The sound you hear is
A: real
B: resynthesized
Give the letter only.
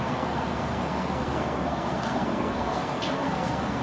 B